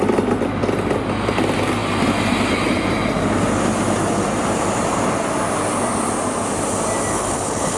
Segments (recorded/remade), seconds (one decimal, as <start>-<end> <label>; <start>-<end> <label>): 0.0-7.1 recorded; 7.1-7.8 remade